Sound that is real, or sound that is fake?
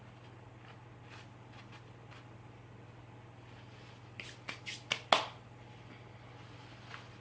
real